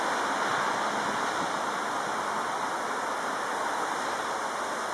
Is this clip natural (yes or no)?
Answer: yes